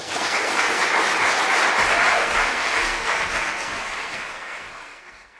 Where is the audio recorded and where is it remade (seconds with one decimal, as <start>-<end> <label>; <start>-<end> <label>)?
0.0-0.8 remade; 0.8-2.1 recorded; 2.1-5.4 remade